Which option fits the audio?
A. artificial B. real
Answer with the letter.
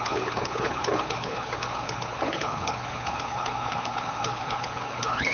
A